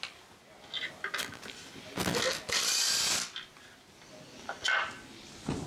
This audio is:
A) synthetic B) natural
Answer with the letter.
B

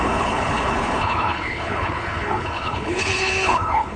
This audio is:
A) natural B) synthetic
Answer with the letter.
B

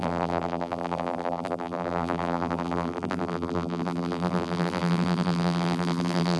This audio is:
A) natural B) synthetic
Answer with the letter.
B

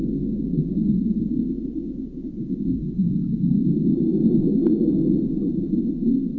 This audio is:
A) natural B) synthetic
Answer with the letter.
A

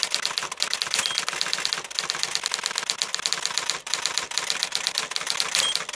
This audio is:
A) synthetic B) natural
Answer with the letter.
B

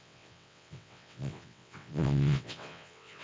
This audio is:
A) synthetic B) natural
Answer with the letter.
A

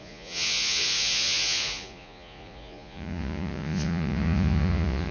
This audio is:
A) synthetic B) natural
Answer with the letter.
A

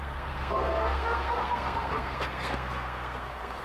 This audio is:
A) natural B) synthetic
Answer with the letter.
B